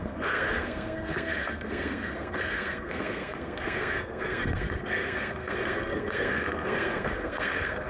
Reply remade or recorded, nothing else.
remade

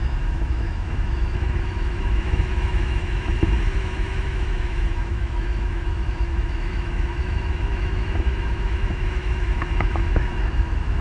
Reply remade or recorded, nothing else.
remade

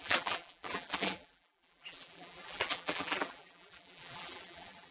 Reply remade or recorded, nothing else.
remade